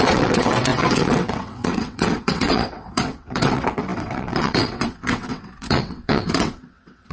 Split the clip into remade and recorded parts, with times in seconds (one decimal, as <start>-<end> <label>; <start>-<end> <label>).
0.0-7.1 remade